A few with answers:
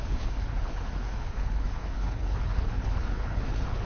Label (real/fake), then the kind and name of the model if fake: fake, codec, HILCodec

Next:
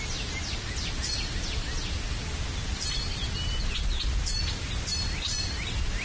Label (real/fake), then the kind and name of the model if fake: real